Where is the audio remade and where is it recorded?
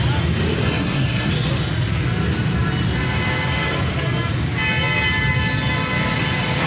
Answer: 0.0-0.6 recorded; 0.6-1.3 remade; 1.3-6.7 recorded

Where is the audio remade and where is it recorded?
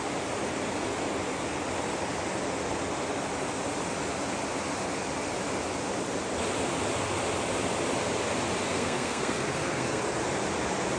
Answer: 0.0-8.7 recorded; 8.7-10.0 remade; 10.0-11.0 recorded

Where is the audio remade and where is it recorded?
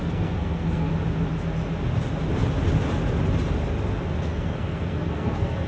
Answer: 0.0-0.9 remade; 0.9-4.2 recorded; 4.2-5.7 remade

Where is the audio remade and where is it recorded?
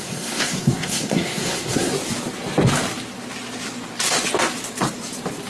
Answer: 0.0-1.9 remade; 1.9-5.5 recorded